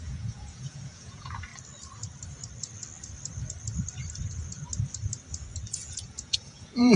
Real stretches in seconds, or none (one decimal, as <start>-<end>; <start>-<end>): 1.5-5.7